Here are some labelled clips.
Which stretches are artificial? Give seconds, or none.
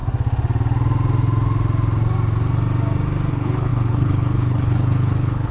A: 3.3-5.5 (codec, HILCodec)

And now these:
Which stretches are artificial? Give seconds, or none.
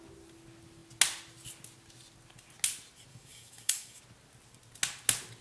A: 3.1-4.0 (codec, DAC)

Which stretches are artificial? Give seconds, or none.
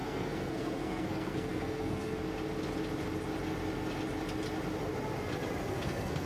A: 0.0-2.2 (codec, SNAC); 5.7-6.3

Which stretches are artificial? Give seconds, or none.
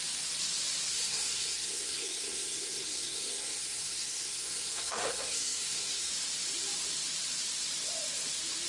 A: 0.9-6.1 (codec, SNAC)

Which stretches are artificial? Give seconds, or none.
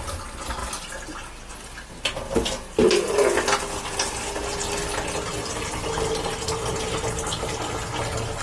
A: none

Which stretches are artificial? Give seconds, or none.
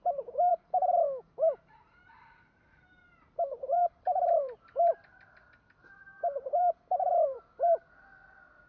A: 0.0-0.5 (vocoder, BigVGAN v2); 1.3-8.7